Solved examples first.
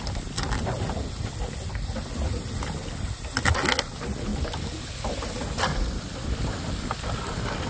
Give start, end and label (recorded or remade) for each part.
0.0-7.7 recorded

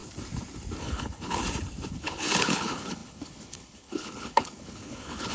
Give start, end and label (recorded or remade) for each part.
0.0-0.8 recorded; 0.8-1.4 remade; 1.4-1.9 recorded; 1.9-5.3 remade

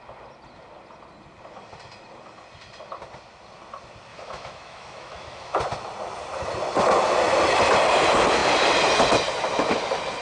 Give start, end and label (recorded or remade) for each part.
0.0-4.1 recorded; 4.1-5.6 remade; 5.6-10.2 recorded

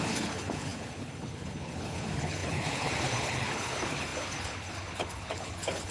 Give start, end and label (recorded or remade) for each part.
0.0-5.9 remade